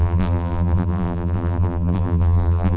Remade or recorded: remade